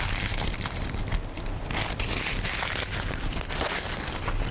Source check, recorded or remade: remade